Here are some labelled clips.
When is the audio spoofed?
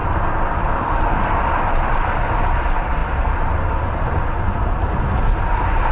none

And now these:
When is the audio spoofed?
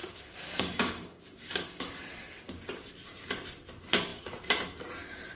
0.0-1.8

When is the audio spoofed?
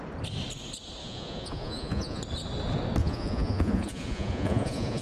1.0-2.2; 3.0-5.0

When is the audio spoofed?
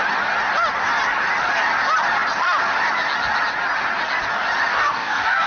4.7-5.5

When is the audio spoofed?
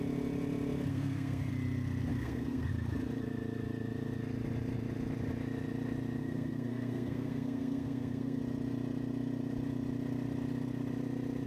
0.9-1.5; 2.1-2.7; 6.2-8.4